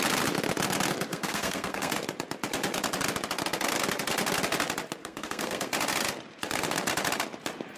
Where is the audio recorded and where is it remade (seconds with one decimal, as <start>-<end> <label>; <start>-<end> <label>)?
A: 0.0-1.1 recorded; 1.1-1.9 remade; 1.9-5.0 recorded; 5.0-5.7 remade; 5.7-7.8 recorded